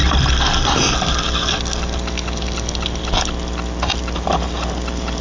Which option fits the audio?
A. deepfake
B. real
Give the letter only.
B